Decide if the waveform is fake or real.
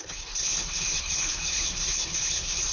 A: fake